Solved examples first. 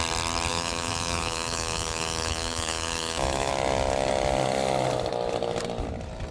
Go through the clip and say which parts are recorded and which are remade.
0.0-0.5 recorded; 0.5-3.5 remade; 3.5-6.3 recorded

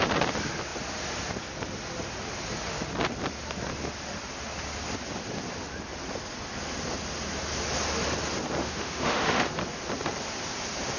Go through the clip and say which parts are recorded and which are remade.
0.0-8.6 recorded; 8.6-9.5 remade; 9.5-11.0 recorded

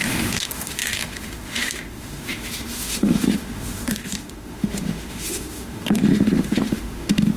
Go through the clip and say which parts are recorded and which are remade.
0.0-7.4 remade

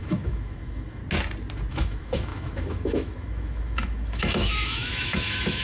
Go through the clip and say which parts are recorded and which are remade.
0.0-1.0 remade; 1.0-1.7 recorded; 1.7-5.6 remade

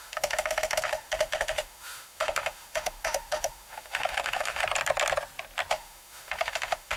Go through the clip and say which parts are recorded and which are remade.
0.0-4.6 remade; 4.6-5.7 recorded; 5.7-7.0 remade